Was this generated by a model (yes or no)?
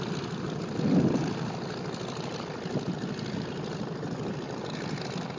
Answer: no